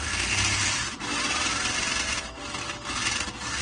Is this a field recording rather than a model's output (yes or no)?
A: yes